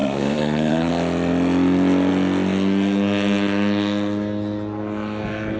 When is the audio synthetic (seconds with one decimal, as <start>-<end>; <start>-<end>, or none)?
0.0-0.9